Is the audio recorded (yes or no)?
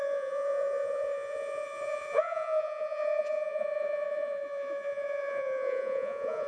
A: no